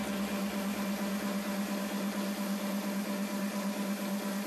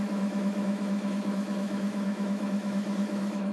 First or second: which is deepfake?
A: second